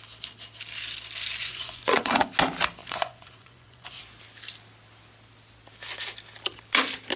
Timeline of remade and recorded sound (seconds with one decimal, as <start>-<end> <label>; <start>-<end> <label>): 0.0-1.4 recorded; 1.4-2.3 remade; 2.3-2.8 recorded; 2.8-4.0 remade; 4.0-7.2 recorded